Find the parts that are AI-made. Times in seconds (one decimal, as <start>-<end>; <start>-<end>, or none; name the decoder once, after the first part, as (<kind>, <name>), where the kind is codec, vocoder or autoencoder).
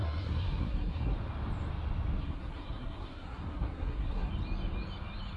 0.0-1.1 (codec, SNAC); 2.2-4.3